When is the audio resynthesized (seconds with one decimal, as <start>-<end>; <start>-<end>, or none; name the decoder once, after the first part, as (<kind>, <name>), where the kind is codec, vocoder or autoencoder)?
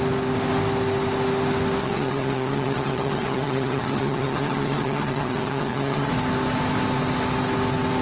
1.8-6.1 (vocoder, HiFi-GAN)